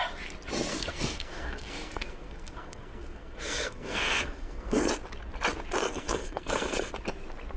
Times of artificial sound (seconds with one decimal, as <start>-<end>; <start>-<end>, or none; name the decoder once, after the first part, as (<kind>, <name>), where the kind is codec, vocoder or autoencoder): 0.7-4.9 (codec, SNAC); 5.8-6.8